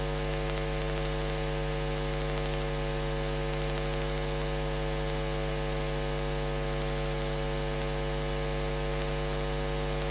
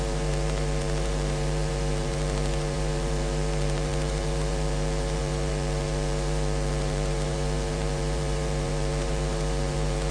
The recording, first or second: first